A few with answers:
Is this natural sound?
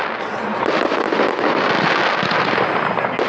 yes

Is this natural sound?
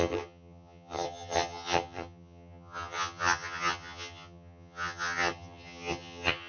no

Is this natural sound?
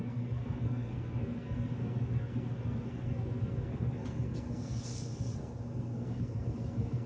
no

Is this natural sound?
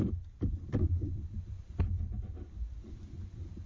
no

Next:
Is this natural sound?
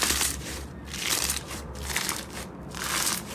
no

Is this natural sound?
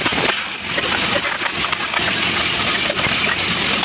yes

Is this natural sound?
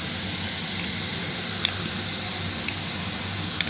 yes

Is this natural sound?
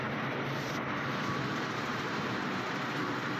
no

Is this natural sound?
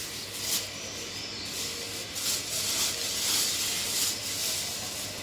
yes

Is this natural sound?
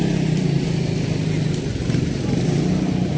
yes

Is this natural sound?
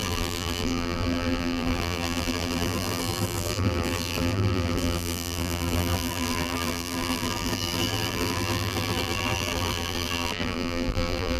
no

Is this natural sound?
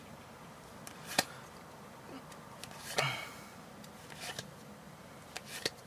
yes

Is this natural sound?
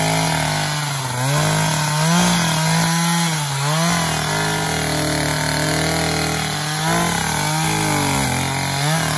yes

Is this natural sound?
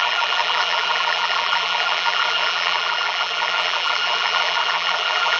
no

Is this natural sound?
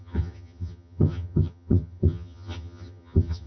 no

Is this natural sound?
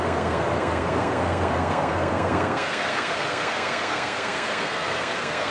no